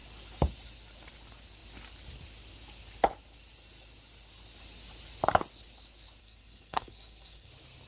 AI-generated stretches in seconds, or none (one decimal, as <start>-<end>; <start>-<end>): 6.2-7.5